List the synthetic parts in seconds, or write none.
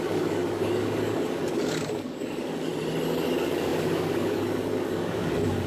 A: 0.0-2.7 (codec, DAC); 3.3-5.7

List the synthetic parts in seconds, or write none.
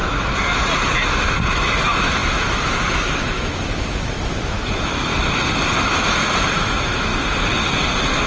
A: 1.5-5.1 (autoencoder, DAC-VAE); 5.9-7.1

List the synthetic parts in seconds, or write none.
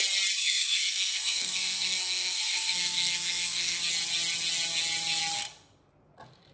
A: 0.4-3.8 (codec, SNAC)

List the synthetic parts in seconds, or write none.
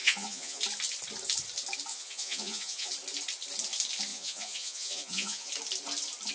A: 0.0-0.6 (vocoder, Vocos); 1.9-2.9; 4.1-5.5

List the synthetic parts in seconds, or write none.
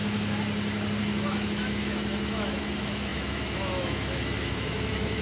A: 1.0-5.2 (autoencoder, DAC-VAE)